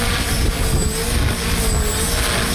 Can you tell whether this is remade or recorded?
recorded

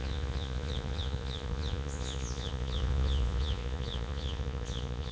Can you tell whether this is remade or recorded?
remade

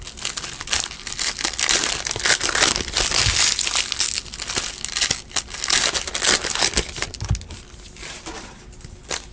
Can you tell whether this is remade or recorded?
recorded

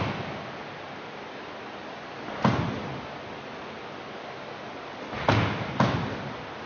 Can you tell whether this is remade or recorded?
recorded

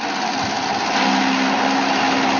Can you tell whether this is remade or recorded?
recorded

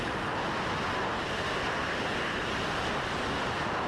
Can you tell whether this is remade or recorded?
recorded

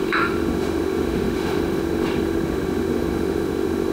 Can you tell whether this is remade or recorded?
remade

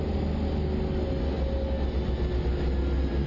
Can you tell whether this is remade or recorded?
recorded